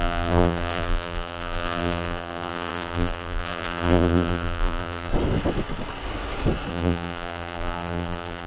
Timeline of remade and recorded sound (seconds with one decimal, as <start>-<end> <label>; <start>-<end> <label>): 0.0-5.1 remade; 5.1-6.7 recorded; 6.7-8.5 remade